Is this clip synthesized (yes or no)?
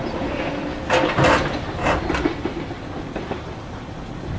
no